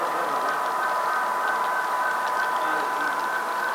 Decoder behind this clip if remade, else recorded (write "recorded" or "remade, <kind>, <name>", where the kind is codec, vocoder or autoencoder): recorded